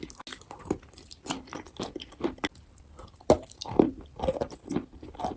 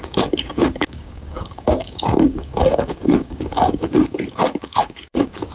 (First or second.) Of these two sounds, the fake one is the second